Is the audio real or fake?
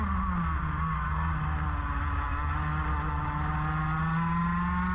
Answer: real